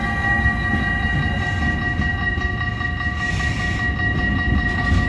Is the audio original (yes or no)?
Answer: yes